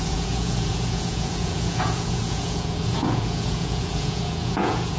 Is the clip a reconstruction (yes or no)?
yes